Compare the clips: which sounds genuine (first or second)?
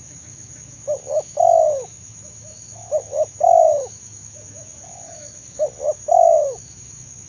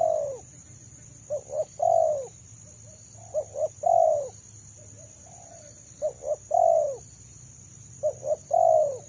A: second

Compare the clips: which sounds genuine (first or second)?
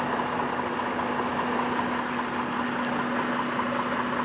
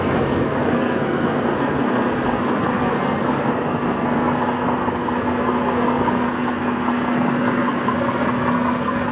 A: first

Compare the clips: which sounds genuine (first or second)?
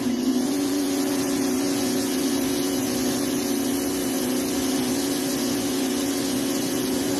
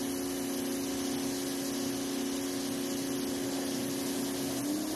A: second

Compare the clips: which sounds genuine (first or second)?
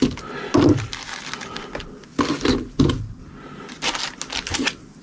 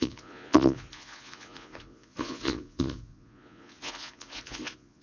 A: first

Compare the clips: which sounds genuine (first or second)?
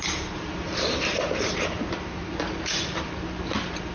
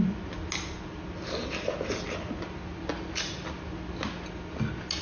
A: second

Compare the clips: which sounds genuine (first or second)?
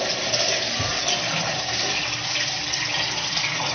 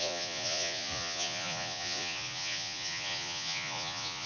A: first